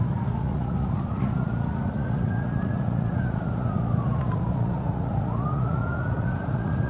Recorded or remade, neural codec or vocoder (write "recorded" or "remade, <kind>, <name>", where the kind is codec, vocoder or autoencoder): remade, vocoder, Vocos